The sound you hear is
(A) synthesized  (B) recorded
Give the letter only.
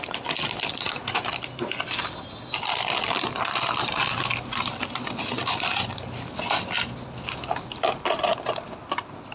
B